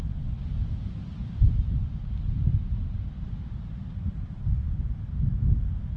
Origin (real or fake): real